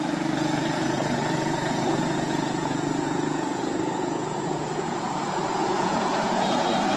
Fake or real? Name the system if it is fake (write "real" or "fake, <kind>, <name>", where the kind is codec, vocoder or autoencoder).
fake, vocoder, Vocos